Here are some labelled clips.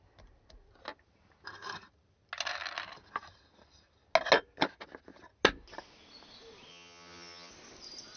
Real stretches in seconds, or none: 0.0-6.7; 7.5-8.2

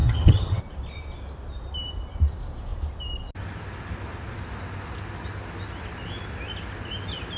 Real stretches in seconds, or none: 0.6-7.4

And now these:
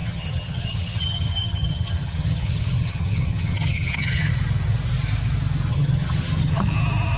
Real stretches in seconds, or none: 4.3-5.7; 6.6-7.2